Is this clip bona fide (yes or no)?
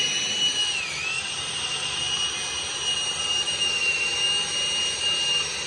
yes